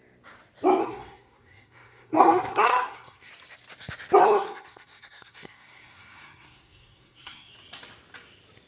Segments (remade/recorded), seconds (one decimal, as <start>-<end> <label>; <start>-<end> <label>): 0.0-0.8 recorded; 0.8-3.3 remade; 3.3-4.2 recorded; 4.2-7.5 remade; 7.5-8.7 recorded